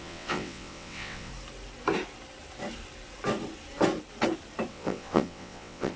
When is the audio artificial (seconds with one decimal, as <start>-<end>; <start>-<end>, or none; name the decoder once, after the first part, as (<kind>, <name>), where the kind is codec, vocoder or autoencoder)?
0.0-1.3 (vocoder, WaveNeXt); 4.7-6.0